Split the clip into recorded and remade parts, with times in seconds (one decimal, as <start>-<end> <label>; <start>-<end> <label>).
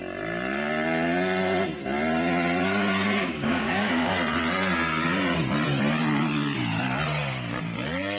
0.0-3.2 recorded; 3.2-4.1 remade; 4.1-8.2 recorded